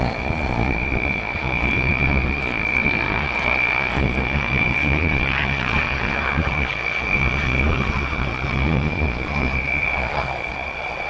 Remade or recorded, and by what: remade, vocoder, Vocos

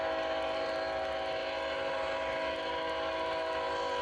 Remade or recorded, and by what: recorded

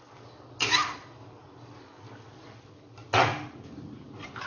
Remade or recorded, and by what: recorded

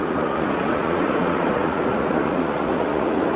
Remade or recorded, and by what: remade, vocoder, Vocos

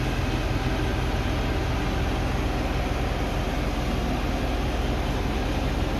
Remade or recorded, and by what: recorded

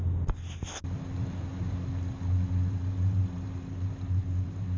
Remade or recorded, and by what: recorded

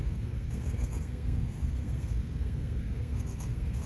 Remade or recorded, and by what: remade, codec, SNAC